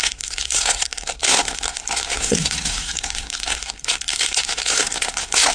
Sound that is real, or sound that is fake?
fake